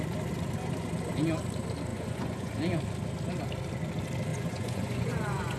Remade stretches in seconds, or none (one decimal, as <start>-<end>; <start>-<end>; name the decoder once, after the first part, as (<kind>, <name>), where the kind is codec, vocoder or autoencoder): 1.9-2.5 (vocoder, Vocos); 4.3-5.6